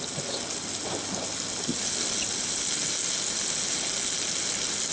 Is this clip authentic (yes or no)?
yes